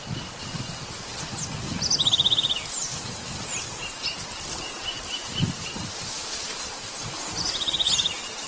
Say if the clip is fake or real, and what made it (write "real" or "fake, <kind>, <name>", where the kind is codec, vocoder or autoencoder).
real